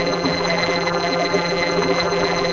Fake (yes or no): yes